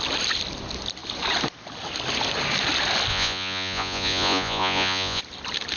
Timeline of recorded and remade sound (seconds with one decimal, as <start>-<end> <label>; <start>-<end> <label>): 0.0-3.1 recorded; 3.1-5.2 remade; 5.2-5.8 recorded